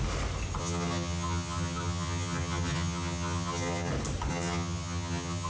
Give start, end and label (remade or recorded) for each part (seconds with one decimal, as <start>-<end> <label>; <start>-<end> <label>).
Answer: 0.0-0.6 recorded; 0.6-3.9 remade; 3.9-4.3 recorded; 4.3-5.5 remade